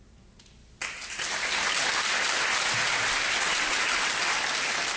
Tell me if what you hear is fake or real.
real